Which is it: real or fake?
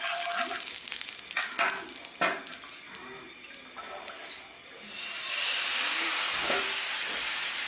real